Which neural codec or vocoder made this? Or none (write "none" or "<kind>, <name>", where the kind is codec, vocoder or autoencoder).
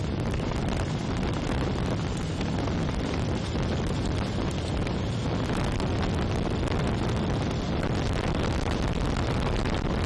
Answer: none